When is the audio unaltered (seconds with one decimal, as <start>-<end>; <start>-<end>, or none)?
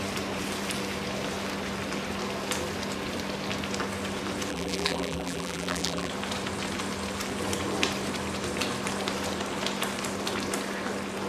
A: 0.0-4.5; 6.1-11.3